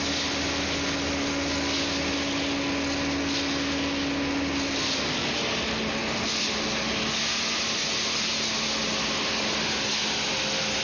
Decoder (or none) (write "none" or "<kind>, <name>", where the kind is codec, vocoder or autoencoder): none